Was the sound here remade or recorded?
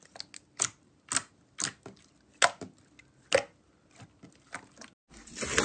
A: recorded